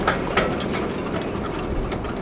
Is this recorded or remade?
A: recorded